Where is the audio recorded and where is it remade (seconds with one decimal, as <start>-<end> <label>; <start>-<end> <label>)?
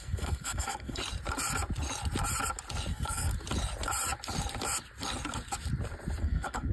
0.0-1.0 remade; 1.0-2.9 recorded; 2.9-3.3 remade; 3.3-6.2 recorded; 6.2-6.7 remade